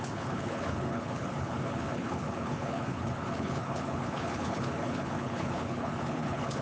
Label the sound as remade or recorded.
remade